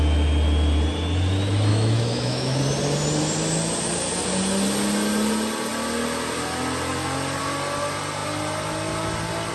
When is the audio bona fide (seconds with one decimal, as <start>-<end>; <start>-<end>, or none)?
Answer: 0.0-1.7; 2.6-9.5